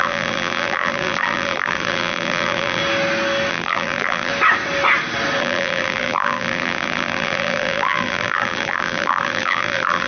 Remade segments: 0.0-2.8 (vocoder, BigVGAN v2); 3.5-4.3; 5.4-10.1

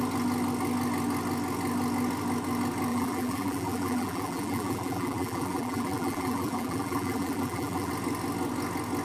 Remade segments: 2.9-7.9 (vocoder, BigVGAN v2)

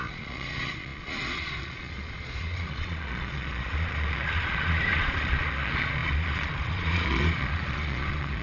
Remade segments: 0.0-8.4 (vocoder, Vocos)

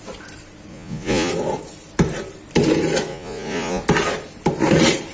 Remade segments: 0.7-1.3 (vocoder, Vocos); 3.1-3.8

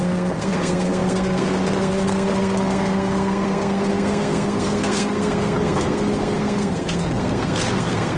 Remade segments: 0.0-8.2 (codec, SNAC)

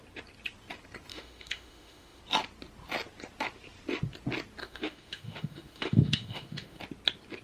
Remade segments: 1.1-2.2 (autoencoder, DAC-VAE); 4.6-6.8